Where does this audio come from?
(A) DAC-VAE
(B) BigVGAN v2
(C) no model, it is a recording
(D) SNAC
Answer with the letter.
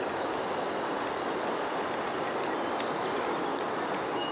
C